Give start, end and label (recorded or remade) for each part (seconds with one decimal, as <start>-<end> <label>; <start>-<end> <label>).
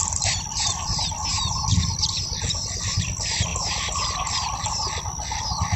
0.0-5.8 recorded